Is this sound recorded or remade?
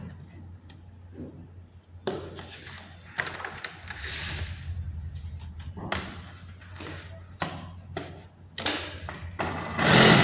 recorded